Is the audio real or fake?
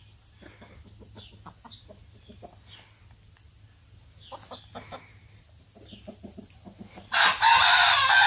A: real